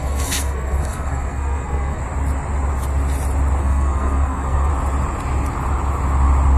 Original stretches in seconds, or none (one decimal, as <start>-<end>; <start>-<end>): 2.0-3.6; 4.7-6.6